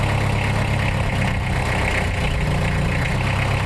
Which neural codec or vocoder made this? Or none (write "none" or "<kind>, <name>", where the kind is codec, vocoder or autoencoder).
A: none